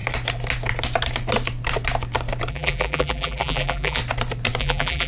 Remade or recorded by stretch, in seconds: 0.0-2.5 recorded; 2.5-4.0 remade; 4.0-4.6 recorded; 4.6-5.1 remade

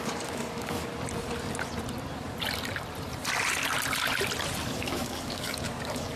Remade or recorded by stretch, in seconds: 0.0-0.9 remade; 0.9-4.6 recorded; 4.6-6.2 remade

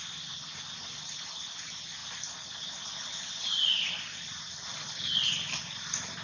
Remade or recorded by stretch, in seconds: 0.0-6.2 recorded

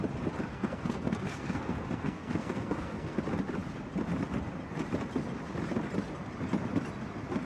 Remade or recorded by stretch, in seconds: 0.0-0.5 recorded; 0.5-3.2 remade; 3.2-7.5 recorded

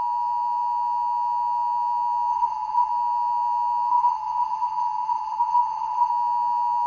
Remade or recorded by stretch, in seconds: 0.0-2.3 recorded; 2.3-2.9 remade; 2.9-3.9 recorded; 3.9-6.1 remade; 6.1-6.9 recorded